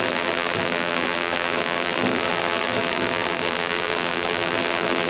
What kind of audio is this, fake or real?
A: fake